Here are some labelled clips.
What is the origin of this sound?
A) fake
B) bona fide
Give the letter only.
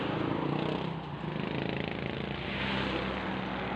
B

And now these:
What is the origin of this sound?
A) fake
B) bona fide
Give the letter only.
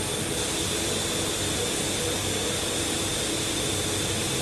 B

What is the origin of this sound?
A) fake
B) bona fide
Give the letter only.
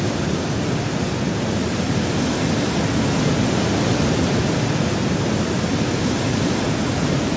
B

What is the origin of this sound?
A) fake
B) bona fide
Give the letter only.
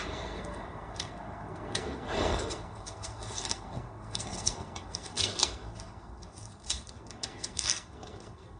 A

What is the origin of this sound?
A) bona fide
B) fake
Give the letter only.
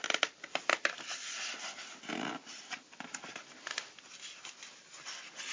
A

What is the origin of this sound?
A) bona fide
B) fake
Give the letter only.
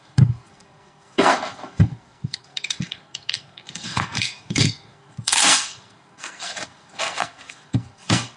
B